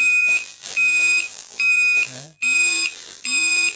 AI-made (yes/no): yes